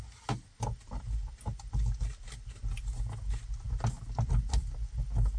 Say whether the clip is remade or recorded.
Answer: recorded